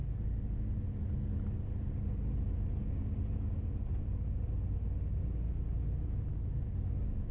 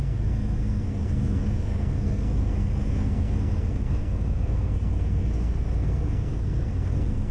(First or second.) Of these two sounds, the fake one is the second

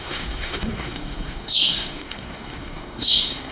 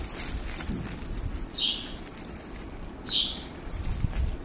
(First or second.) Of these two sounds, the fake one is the first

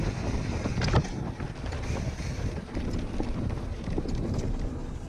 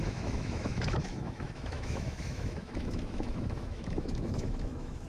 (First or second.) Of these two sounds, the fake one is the second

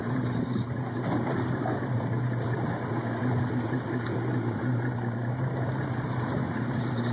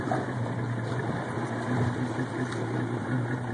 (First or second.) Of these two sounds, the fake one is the first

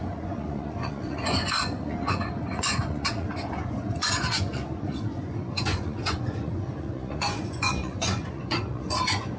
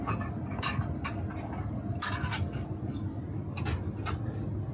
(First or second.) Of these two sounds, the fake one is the first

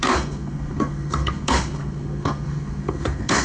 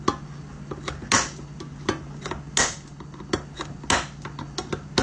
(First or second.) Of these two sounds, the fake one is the first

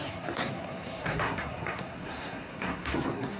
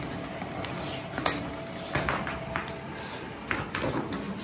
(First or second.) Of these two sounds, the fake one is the first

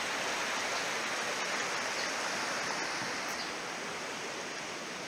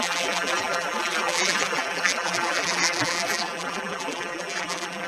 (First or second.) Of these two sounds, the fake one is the second